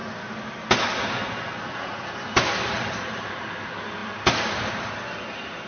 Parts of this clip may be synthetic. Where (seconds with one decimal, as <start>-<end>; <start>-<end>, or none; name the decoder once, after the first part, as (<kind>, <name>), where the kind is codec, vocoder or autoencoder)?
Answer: none